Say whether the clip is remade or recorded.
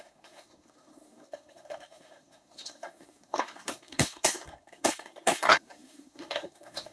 remade